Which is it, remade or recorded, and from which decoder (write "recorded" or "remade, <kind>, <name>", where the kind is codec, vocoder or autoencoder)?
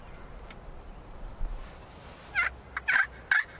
recorded